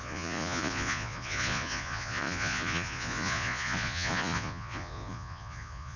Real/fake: fake